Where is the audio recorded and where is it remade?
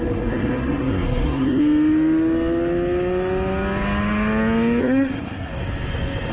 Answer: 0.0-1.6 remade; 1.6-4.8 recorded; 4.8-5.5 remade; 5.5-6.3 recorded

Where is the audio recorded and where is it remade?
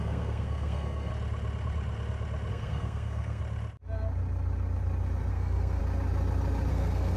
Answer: 0.0-1.1 remade; 1.1-2.5 recorded; 2.5-3.4 remade; 3.4-5.3 recorded; 5.3-5.8 remade; 5.8-6.7 recorded; 6.7-7.2 remade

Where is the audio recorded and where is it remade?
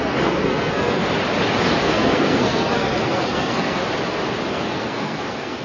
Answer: 0.0-1.0 remade; 1.0-1.8 recorded; 1.8-3.8 remade; 3.8-4.5 recorded; 4.5-5.6 remade